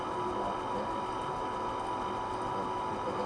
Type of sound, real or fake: real